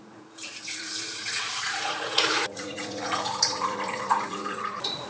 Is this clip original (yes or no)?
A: no